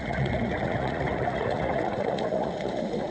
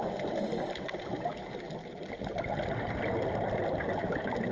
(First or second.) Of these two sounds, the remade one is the first